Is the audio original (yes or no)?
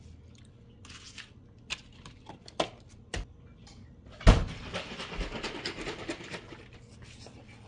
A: yes